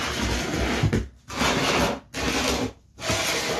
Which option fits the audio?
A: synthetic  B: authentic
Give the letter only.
B